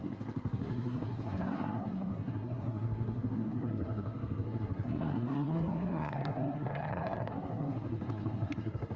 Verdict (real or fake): fake